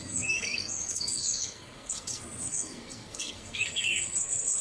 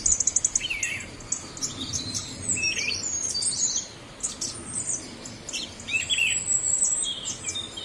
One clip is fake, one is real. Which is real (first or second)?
second